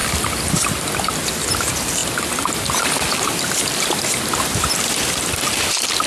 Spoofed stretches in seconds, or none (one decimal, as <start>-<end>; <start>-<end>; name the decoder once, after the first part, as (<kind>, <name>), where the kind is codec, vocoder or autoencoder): 1.6-2.0 (vocoder, BigVGAN v2); 3.3-6.1